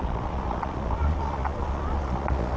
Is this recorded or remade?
remade